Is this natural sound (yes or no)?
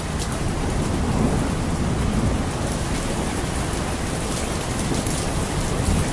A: yes